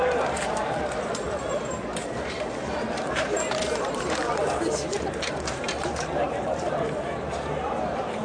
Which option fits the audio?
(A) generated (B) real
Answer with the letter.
A